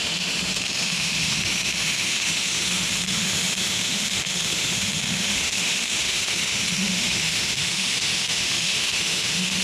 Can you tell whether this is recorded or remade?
remade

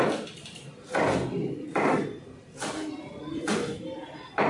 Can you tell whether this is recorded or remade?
remade